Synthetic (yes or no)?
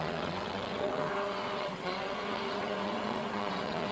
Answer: yes